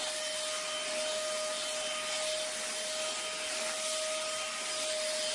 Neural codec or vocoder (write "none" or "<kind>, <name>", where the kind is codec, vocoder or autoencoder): none